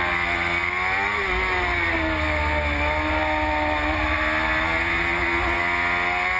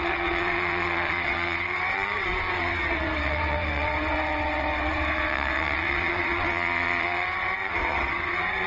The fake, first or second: second